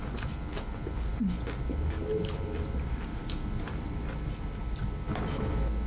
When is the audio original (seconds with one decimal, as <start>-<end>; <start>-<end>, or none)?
0.0-5.9